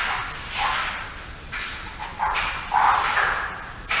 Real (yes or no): yes